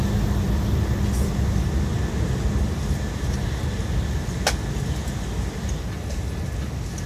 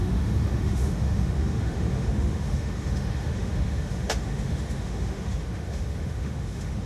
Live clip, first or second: first